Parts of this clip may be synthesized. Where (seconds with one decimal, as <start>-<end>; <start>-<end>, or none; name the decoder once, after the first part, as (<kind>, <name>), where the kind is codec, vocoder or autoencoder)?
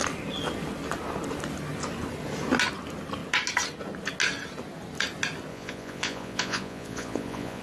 5.5-7.6 (vocoder, Vocos)